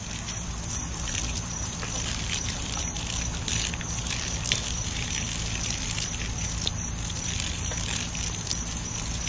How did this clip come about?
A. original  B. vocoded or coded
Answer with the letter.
B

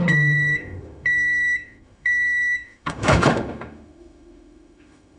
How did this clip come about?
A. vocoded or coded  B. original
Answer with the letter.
A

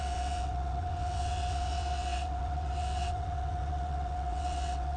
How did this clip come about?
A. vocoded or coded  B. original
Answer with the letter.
A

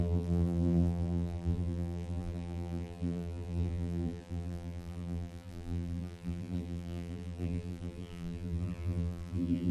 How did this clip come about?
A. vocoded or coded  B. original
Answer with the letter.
A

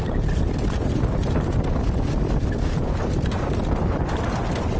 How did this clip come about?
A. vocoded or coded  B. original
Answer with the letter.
B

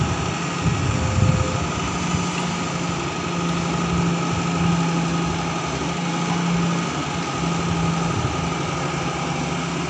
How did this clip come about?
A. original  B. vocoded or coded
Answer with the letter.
A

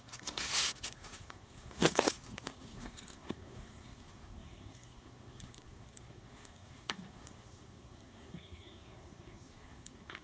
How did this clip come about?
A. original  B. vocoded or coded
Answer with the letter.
B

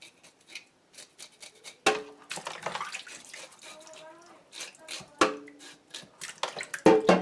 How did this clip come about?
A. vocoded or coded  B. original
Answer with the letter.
B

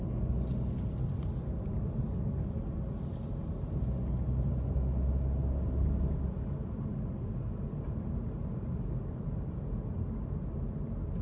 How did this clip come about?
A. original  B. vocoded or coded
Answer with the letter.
A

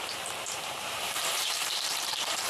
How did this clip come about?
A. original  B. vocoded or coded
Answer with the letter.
B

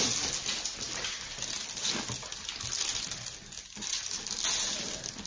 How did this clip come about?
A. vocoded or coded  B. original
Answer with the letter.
B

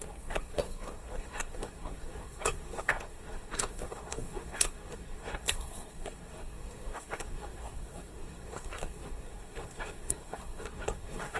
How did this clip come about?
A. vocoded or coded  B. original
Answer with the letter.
A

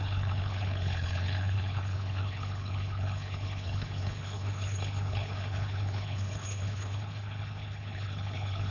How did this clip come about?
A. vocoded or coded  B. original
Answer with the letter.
A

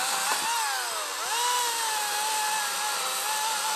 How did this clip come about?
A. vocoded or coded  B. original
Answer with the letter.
B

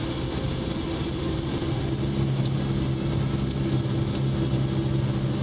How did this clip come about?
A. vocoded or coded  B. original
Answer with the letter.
B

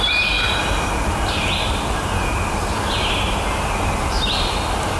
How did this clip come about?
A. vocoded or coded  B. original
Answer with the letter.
B